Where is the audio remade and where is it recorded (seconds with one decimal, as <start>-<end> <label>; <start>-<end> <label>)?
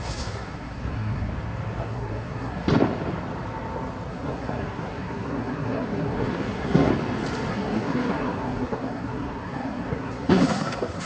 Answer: 0.0-1.3 remade; 1.3-1.8 recorded; 1.8-2.7 remade; 2.7-4.1 recorded; 4.1-6.9 remade; 6.9-7.5 recorded; 7.5-11.1 remade